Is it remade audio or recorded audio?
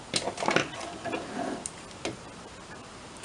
recorded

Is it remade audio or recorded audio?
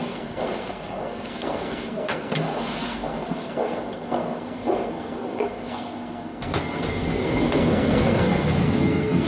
remade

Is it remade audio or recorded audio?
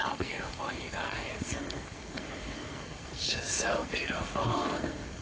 remade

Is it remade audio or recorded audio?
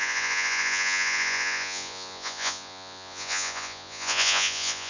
remade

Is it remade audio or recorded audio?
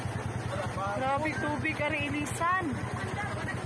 recorded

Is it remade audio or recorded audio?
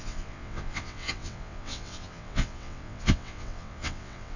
remade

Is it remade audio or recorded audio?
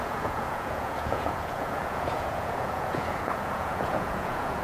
remade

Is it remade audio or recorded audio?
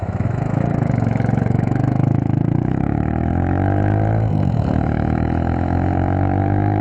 remade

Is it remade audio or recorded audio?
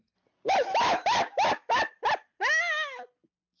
recorded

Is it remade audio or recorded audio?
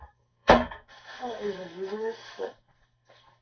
remade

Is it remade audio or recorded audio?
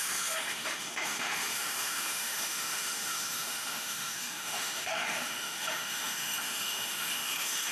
remade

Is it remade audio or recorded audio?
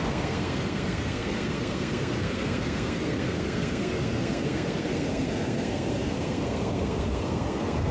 remade